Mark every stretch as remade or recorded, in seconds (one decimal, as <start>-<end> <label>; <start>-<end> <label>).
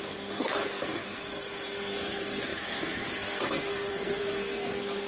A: 0.0-5.1 remade